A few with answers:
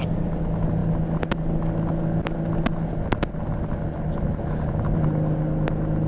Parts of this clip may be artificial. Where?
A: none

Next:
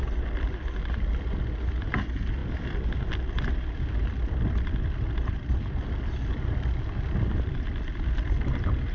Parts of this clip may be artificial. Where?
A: none